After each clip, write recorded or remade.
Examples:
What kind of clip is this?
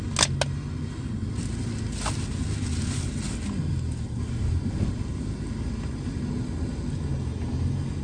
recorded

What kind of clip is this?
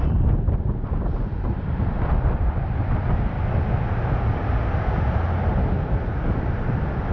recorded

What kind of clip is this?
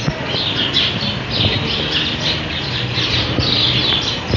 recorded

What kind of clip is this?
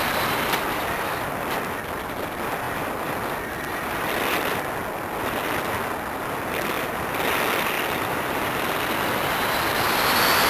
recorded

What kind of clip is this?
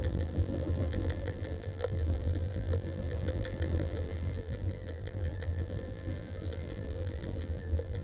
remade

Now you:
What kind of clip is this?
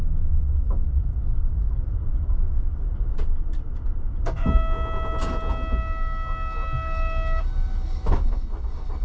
recorded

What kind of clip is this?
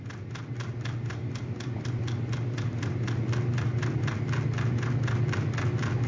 recorded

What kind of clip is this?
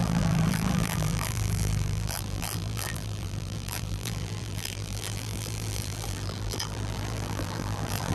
remade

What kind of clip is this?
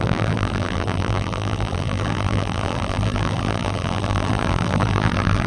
remade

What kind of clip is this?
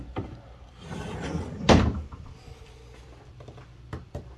remade